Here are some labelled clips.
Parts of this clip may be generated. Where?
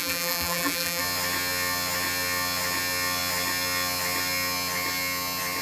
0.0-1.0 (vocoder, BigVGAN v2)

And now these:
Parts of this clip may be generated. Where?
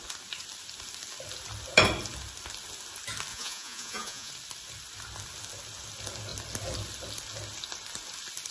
3.3-4.3 (vocoder, Vocos)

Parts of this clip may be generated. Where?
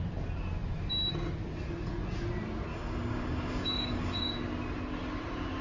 2.7-4.3 (codec, DAC)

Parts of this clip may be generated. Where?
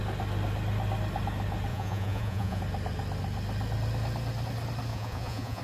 1.7-2.6 (vocoder, Vocos); 4.9-5.6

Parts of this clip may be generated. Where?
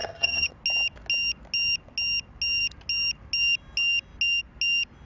0.0-0.5 (vocoder, HiFi-GAN)